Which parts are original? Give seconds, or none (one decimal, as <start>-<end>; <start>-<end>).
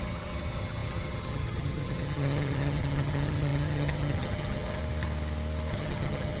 4.8-5.7